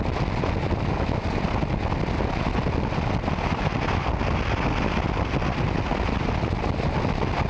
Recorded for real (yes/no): yes